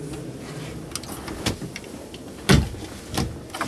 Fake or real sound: real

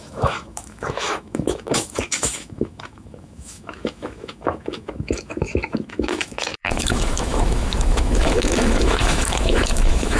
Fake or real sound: fake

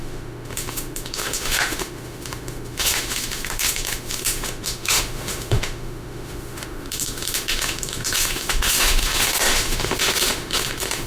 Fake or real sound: fake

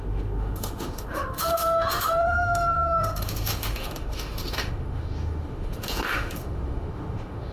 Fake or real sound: fake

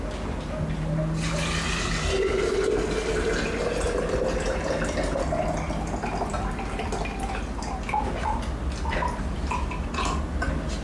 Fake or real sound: real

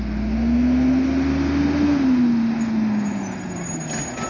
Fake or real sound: real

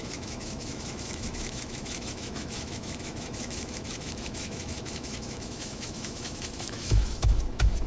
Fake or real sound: fake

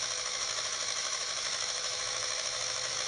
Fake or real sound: fake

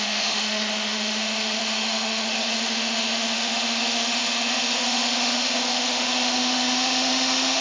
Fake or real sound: fake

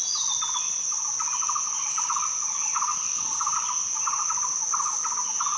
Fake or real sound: real